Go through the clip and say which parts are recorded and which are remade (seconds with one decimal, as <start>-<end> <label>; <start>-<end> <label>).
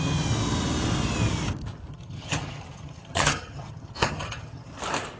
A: 0.0-1.9 recorded; 1.9-4.7 remade; 4.7-5.2 recorded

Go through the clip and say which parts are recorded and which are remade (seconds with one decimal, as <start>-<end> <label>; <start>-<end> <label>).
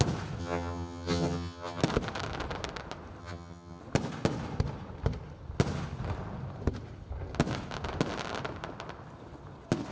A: 0.0-0.4 recorded; 0.4-1.8 remade; 1.8-3.2 recorded; 3.2-3.8 remade; 3.8-9.9 recorded